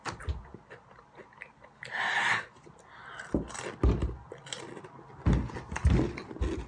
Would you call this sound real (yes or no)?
yes